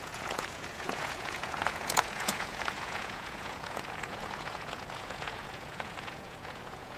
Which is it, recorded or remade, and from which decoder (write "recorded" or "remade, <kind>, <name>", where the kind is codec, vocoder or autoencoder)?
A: remade, vocoder, Vocos